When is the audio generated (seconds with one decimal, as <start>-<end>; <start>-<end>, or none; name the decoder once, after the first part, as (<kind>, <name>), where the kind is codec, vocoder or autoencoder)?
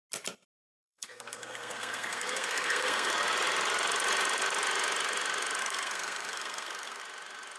0.6-3.1 (codec, SNAC); 5.6-7.0